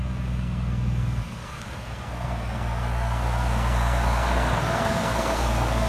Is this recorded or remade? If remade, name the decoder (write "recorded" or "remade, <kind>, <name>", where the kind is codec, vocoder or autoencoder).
remade, codec, SNAC